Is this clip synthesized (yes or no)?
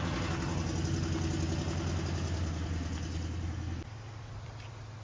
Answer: no